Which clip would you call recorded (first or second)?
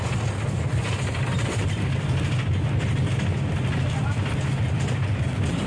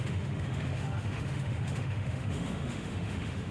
first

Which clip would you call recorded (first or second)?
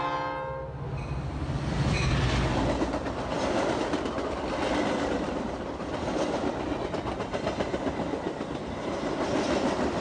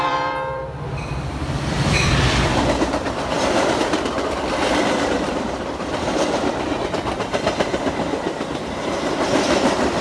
first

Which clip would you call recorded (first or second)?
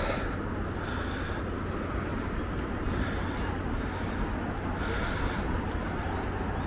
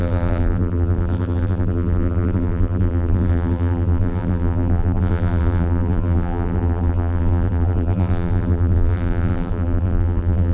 first